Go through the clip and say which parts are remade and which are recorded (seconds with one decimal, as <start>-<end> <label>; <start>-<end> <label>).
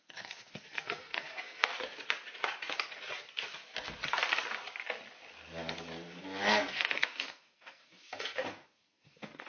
0.0-1.7 remade; 1.7-6.2 recorded; 6.2-9.5 remade